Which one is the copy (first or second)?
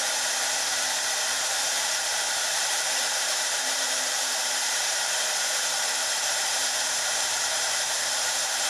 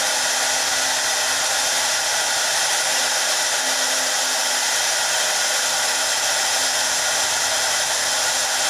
first